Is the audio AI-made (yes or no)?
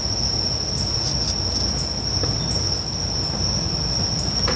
no